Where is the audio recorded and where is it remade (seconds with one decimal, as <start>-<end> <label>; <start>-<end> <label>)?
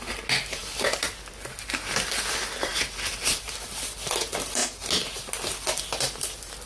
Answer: 0.0-6.7 recorded